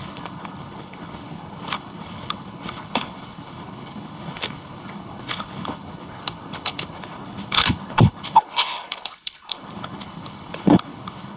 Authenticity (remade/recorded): remade